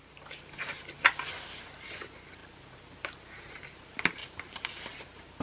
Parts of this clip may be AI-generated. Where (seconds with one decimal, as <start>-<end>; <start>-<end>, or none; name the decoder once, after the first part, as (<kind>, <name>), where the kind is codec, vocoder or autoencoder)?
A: none